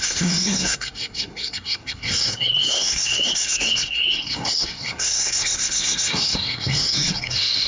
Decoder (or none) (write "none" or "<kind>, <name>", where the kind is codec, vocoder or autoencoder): codec, SNAC